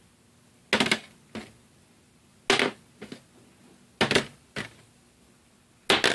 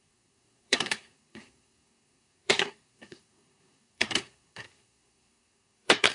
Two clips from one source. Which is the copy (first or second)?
second